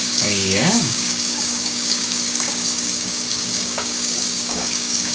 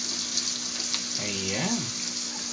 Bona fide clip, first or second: second